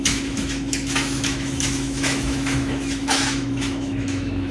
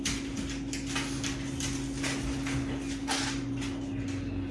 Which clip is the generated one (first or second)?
first